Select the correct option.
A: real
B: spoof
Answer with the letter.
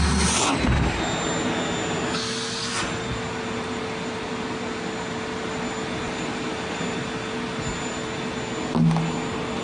A